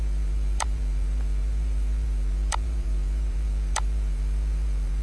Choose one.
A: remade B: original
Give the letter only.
A